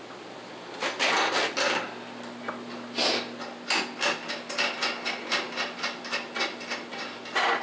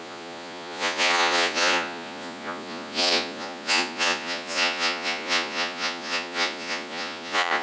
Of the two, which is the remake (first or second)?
second